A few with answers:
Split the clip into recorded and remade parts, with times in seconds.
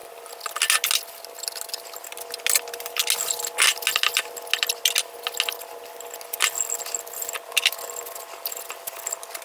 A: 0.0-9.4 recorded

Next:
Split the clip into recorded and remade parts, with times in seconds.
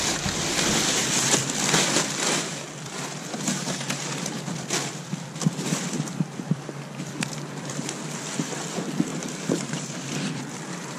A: 0.0-11.0 remade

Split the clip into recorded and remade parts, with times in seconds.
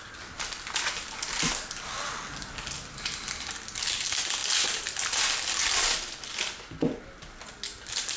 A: 0.0-4.4 recorded; 4.4-6.6 remade; 6.6-8.2 recorded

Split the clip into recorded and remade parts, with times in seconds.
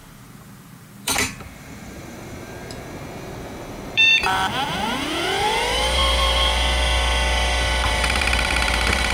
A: 0.0-6.0 remade; 6.0-7.9 recorded; 7.9-9.1 remade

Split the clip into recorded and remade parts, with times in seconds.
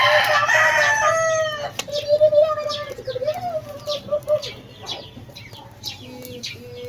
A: 0.0-2.1 recorded; 2.1-2.7 remade; 2.7-6.9 recorded